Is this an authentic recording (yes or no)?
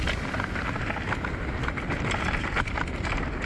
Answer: yes